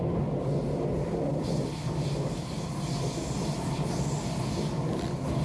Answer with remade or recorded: recorded